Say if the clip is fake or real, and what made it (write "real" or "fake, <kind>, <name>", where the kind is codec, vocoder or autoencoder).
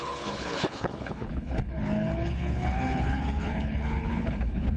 fake, codec, HILCodec